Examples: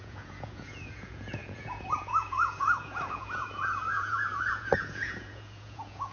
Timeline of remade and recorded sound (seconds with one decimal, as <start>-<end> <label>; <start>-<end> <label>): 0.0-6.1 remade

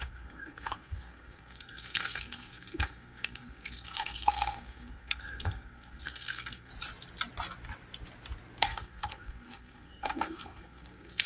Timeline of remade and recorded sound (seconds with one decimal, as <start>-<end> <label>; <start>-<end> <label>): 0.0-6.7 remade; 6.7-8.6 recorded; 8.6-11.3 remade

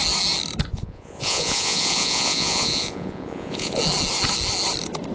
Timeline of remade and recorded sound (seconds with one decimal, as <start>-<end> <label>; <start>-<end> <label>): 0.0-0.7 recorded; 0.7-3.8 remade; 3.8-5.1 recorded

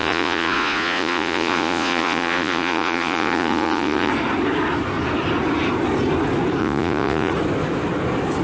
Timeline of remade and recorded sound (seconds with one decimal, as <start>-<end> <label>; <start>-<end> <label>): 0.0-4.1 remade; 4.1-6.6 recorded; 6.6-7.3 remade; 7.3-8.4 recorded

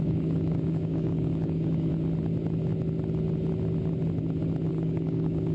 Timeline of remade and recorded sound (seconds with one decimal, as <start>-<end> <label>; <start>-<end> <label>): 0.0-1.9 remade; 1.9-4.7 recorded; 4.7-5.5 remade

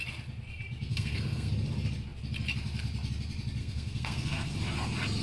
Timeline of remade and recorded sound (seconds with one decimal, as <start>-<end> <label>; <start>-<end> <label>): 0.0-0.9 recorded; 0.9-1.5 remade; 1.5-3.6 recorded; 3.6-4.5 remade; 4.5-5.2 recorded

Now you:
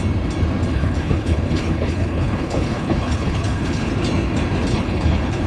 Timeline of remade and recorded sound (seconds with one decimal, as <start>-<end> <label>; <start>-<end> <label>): 0.0-0.7 recorded; 0.7-3.9 remade; 3.9-4.7 recorded; 4.7-5.5 remade